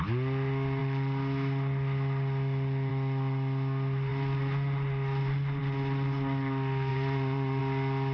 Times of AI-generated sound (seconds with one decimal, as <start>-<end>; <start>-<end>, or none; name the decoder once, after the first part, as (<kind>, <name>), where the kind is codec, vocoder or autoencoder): 6.9-7.6 (vocoder, BigVGAN v2)